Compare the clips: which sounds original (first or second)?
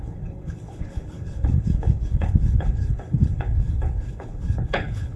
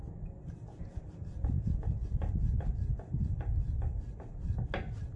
second